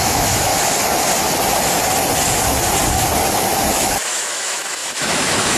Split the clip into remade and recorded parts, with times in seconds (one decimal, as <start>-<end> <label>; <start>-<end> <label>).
0.0-0.5 remade; 0.5-3.7 recorded; 3.7-5.6 remade